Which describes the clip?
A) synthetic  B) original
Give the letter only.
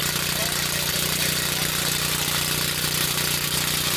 A